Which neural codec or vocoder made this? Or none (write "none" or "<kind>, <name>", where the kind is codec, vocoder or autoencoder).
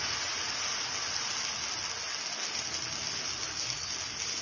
none